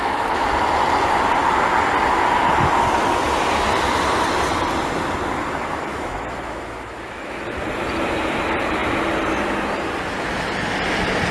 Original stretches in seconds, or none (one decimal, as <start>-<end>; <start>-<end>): 0.5-5.9; 7.4-11.3